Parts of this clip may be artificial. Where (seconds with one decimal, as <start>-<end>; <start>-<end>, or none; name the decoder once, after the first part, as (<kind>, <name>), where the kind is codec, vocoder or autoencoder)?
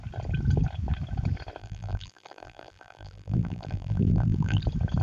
1.6-4.6 (vocoder, BigVGAN v2)